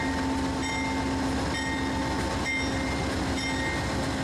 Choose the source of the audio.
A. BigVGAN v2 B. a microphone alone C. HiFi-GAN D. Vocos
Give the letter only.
B